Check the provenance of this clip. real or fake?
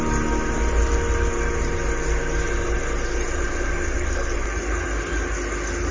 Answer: real